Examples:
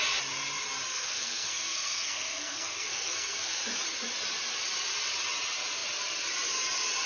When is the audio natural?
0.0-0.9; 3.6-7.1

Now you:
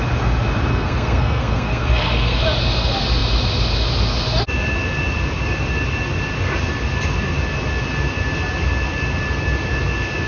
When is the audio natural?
0.0-0.7; 2.4-10.3

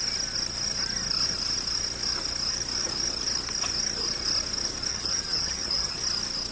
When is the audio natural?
0.0-4.9; 6.0-6.5

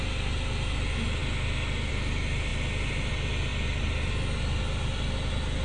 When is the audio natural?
0.0-5.6

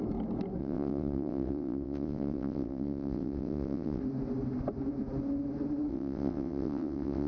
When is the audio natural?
0.0-0.6; 4.0-5.9

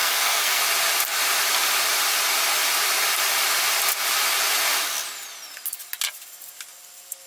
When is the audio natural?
0.6-7.3

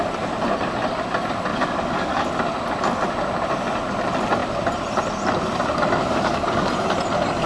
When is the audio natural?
0.0-1.5; 2.3-6.0; 6.7-7.5